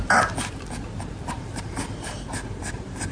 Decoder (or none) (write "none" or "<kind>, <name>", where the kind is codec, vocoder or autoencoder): none